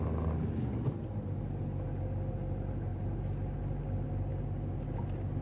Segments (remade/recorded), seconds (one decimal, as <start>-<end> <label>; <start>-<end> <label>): 0.0-5.4 recorded